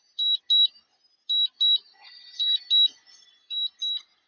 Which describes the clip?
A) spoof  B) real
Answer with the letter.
B